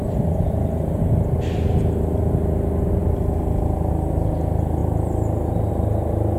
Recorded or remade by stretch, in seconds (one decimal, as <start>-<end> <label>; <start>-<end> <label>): 0.0-6.4 recorded